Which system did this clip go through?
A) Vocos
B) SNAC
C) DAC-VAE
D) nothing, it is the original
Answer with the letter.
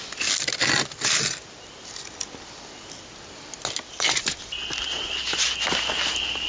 D